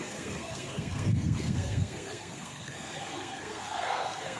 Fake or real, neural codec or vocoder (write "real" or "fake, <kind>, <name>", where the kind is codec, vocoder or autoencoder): fake, codec, SNAC